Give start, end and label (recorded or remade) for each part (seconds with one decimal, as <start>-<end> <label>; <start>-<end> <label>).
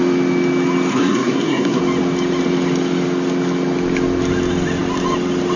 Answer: 0.0-0.9 recorded; 0.9-1.8 remade; 1.8-5.6 recorded